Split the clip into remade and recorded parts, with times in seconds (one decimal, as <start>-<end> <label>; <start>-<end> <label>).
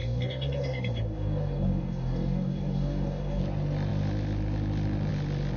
0.0-3.4 remade; 3.4-5.6 recorded